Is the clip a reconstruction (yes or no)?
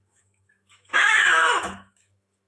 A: yes